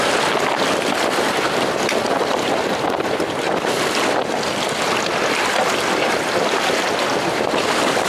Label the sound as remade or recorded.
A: recorded